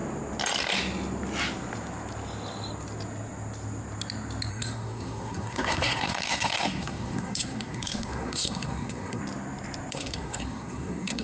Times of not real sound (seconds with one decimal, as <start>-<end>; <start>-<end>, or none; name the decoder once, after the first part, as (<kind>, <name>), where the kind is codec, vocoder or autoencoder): 4.5-9.2 (codec, SNAC); 9.9-11.2